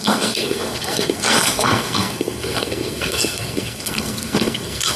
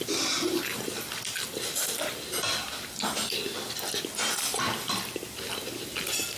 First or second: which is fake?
first